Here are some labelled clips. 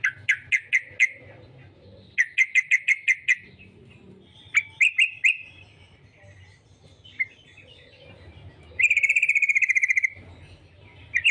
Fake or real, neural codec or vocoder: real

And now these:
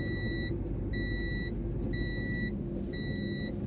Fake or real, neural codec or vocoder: real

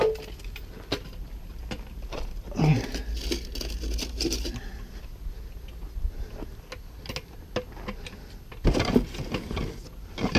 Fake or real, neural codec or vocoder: real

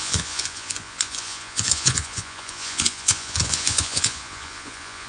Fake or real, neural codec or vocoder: fake, vocoder, Vocos